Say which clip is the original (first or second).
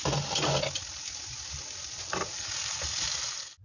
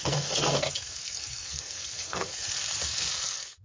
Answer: first